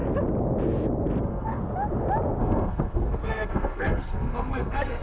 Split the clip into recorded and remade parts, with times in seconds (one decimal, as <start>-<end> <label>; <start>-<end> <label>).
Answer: 0.0-1.2 recorded; 1.2-1.6 remade; 1.6-2.4 recorded; 2.4-5.0 remade